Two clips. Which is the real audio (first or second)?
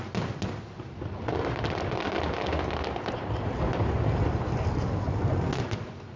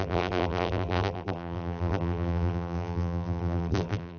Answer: first